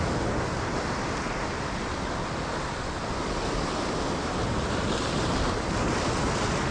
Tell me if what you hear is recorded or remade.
recorded